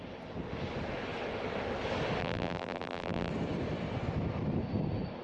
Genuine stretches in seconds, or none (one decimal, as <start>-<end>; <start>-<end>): 0.0-2.2; 3.3-5.2